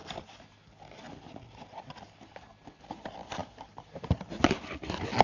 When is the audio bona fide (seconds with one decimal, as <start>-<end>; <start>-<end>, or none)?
0.0-5.2

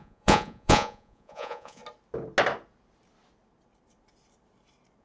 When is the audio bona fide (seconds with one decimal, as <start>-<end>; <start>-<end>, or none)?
1.8-5.0

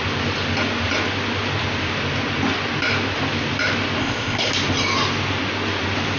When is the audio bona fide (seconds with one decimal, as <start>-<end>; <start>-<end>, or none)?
0.0-4.0; 4.5-6.2